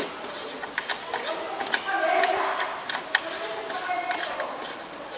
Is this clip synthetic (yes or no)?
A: no